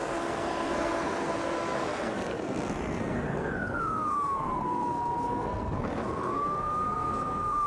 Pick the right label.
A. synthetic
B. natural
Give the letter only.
A